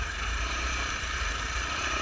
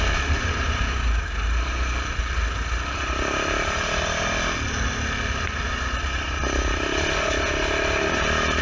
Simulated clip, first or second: first